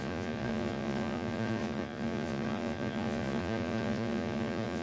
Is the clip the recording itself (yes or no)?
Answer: no